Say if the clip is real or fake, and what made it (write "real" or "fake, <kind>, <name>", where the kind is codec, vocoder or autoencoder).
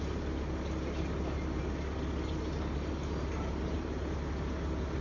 real